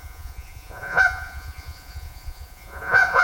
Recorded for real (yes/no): no